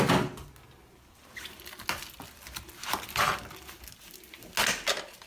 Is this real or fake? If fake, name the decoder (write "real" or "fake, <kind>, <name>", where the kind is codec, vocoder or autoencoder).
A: real